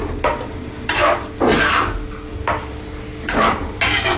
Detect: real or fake real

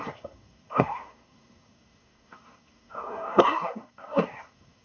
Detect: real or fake fake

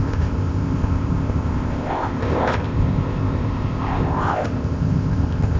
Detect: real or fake fake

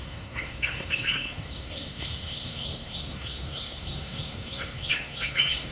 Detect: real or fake fake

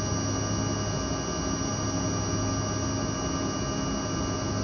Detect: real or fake real